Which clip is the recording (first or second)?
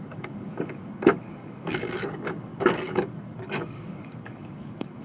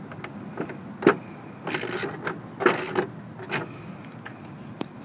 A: second